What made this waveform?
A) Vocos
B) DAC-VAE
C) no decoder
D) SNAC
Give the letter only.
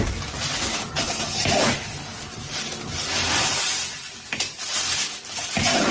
C